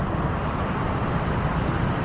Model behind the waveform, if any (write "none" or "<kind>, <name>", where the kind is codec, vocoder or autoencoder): vocoder, BigVGAN v2